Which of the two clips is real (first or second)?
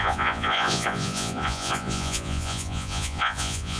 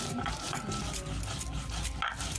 second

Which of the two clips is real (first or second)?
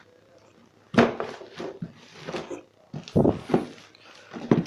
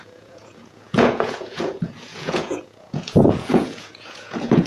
first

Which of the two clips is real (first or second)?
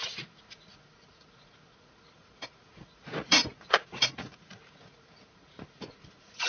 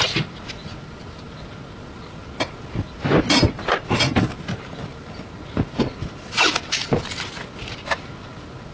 second